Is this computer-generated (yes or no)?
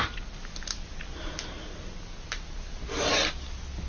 no